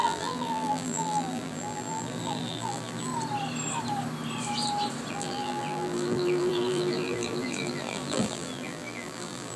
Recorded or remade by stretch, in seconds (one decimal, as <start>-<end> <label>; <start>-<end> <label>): 0.0-3.1 remade; 3.1-5.1 recorded; 5.1-9.6 remade